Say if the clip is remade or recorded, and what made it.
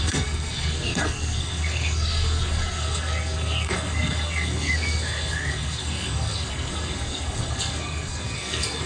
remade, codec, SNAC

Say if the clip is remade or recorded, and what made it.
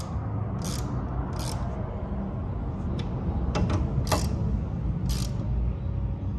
recorded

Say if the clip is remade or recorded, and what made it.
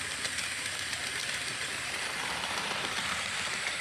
remade, vocoder, BigVGAN v2